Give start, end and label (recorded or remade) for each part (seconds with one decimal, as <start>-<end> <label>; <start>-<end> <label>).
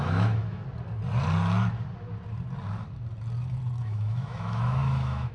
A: 0.0-0.6 remade; 0.6-3.8 recorded; 3.8-5.3 remade